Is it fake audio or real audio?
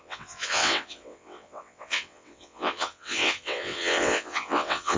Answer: fake